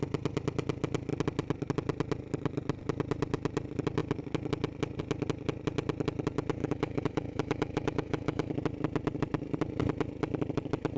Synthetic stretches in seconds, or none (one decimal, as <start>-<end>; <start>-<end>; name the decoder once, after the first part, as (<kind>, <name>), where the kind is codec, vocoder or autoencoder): 6.6-8.5 (autoencoder, DAC-VAE)